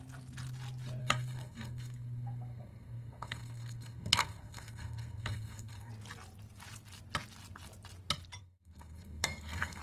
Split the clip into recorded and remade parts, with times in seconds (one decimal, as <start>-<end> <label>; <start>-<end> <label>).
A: 0.0-1.0 recorded; 1.0-5.9 remade; 5.9-8.4 recorded; 8.4-9.8 remade